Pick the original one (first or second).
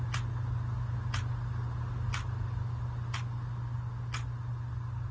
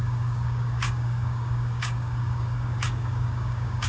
first